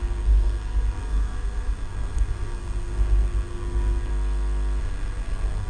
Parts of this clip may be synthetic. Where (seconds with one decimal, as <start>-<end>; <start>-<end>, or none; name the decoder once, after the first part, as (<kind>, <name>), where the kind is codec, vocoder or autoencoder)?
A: 0.0-4.1 (codec, SNAC); 4.8-5.7